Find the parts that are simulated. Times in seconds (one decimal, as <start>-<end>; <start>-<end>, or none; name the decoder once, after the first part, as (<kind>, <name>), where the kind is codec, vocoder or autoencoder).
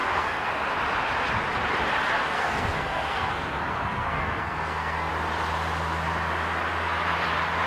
0.0-0.5 (codec, SNAC); 2.2-5.1